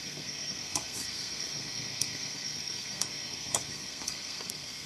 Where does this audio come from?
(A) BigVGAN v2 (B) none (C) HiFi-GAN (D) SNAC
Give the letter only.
D